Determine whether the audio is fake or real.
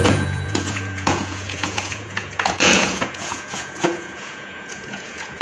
fake